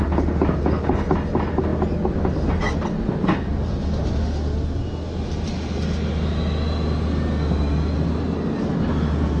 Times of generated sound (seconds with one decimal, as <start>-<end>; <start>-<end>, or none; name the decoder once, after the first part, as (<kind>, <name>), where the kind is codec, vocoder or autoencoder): none